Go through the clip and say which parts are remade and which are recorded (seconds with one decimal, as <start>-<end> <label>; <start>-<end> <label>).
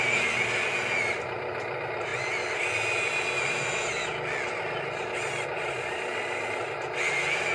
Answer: 0.0-7.5 recorded